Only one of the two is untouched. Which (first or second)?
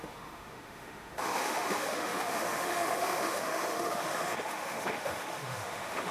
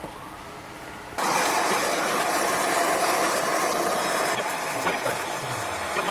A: second